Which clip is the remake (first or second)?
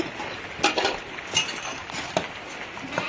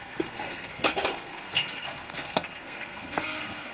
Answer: second